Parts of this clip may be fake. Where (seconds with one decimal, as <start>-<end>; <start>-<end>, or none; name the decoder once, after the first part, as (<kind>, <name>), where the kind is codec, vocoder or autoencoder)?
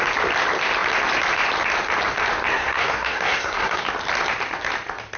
2.5-3.8 (codec, SNAC)